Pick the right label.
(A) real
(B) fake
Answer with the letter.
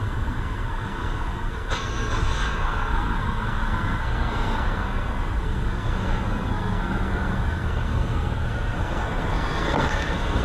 B